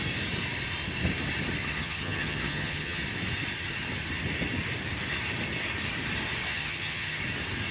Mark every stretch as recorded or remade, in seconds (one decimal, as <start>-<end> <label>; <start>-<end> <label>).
0.0-1.6 recorded; 1.6-3.0 remade; 3.0-6.5 recorded; 6.5-7.2 remade; 7.2-7.7 recorded